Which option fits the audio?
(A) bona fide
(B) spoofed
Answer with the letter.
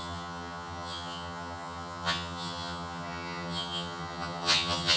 B